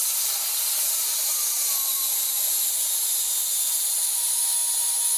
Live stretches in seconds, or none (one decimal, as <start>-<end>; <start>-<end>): 0.0-0.4; 3.1-3.5; 4.4-5.2